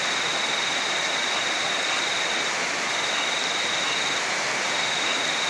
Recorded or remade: recorded